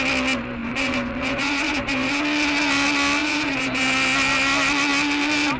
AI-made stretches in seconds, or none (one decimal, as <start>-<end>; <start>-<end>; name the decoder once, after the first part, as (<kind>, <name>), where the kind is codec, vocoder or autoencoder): 0.6-2.2 (vocoder, Vocos); 3.2-3.8